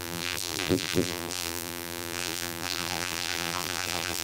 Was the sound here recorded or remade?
remade